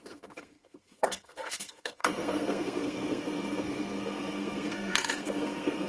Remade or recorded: remade